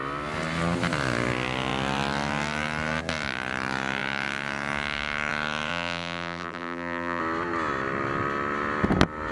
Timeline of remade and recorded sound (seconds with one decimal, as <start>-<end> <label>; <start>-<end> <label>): 0.0-5.7 recorded; 5.7-7.2 remade; 7.2-9.3 recorded